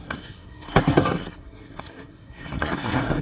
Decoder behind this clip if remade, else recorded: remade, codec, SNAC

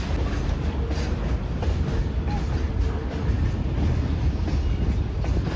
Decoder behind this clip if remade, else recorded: recorded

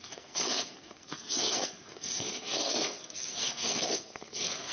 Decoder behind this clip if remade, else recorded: remade, codec, SNAC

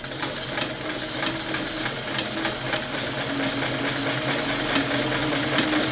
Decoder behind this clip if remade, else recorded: recorded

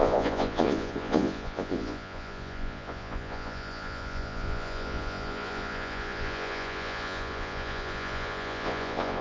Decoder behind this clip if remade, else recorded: remade, vocoder, Vocos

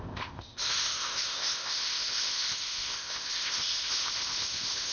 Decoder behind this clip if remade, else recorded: remade, codec, ZipCodec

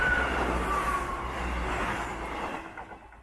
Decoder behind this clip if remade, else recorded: recorded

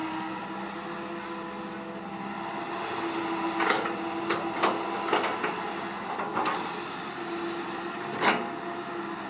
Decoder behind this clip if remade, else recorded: recorded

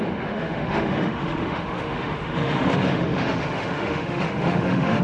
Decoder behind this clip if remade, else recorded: remade, autoencoder, DAC-VAE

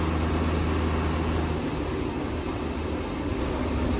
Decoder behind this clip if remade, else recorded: recorded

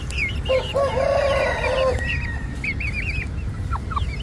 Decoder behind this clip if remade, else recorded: recorded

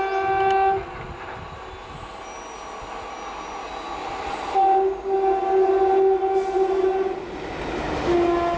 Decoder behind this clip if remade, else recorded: recorded